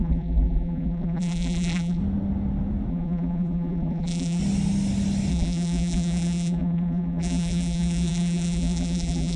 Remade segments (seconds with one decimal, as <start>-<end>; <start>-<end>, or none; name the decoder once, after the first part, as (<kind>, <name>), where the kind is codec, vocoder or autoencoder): 0.0-2.0 (vocoder, BigVGAN v2); 2.9-4.4; 5.3-9.4